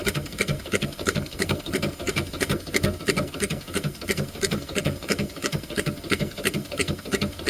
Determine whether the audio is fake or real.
fake